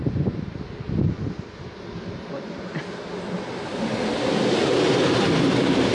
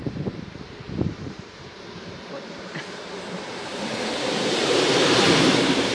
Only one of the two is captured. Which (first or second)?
first